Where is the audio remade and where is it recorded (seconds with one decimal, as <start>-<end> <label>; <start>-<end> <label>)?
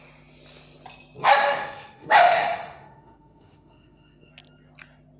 0.0-1.2 recorded; 1.2-4.3 remade; 4.3-5.2 recorded